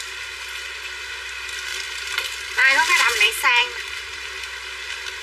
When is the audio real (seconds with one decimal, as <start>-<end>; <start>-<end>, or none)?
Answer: 0.0-1.7; 4.4-5.2